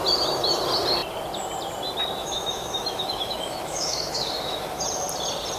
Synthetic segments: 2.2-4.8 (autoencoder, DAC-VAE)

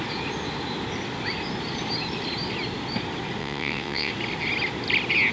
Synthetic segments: 3.4-4.1 (vocoder, WaveNeXt)

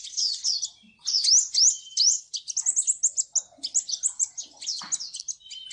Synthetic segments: none

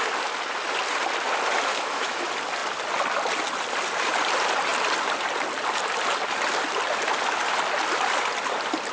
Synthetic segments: 1.7-2.2 (autoencoder, DAC-VAE)

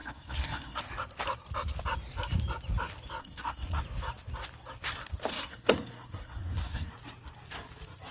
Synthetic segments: 0.0-0.8 (codec, SNAC); 3.2-3.8; 5.3-6.9

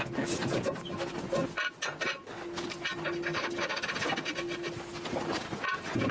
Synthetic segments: none